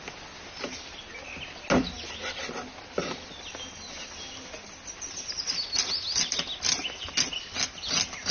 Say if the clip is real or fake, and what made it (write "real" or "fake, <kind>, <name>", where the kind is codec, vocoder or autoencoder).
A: real